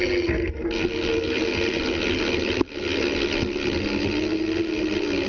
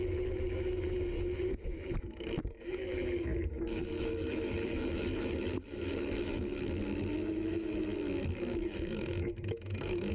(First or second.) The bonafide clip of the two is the first